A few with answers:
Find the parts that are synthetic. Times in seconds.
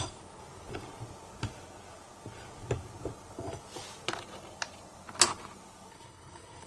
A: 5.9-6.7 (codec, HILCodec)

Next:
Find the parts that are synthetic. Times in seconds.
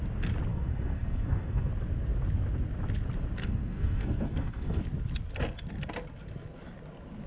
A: 0.5-1.7 (codec, SNAC); 3.4-4.8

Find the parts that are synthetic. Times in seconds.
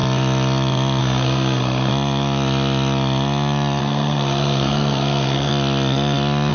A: 1.0-1.9 (codec, SNAC); 3.8-5.5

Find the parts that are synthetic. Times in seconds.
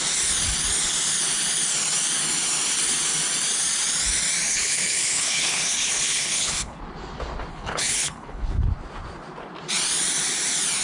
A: 4.5-6.8 (codec, HILCodec); 7.5-8.7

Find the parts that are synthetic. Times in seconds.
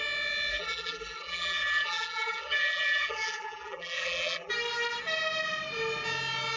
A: 0.5-4.5 (vocoder, BigVGAN v2)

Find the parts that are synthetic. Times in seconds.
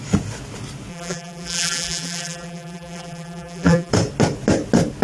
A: 0.9-3.9 (vocoder, BigVGAN v2)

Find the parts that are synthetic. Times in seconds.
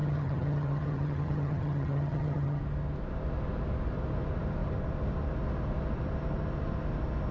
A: 0.0-2.6 (vocoder, HiFi-GAN)